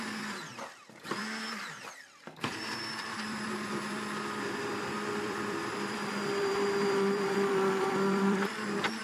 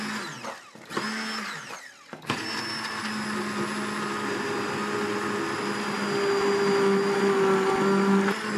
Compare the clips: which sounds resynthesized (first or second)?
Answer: first